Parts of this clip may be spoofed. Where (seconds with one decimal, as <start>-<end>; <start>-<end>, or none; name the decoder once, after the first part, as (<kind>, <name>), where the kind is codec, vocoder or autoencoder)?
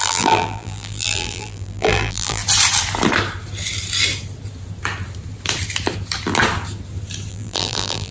0.0-2.4 (vocoder, BigVGAN v2); 7.3-8.1